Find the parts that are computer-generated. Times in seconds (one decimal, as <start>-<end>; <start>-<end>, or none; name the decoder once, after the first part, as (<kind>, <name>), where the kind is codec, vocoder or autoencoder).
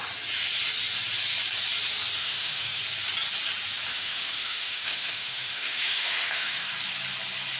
2.2-2.8 (autoencoder, DAC-VAE); 3.9-6.7